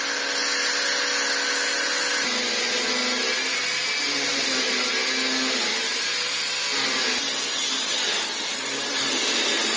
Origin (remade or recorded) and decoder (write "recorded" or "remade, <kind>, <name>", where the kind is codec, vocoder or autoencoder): recorded